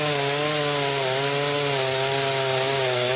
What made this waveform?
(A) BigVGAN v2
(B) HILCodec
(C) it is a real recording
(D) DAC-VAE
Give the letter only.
C